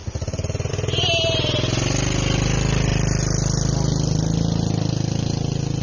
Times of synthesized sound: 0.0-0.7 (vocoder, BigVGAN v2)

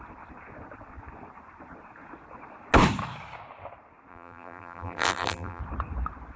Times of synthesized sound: 4.1-5.6 (vocoder, BigVGAN v2)

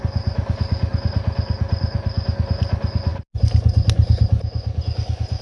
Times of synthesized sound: none

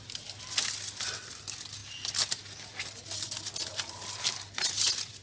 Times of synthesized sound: none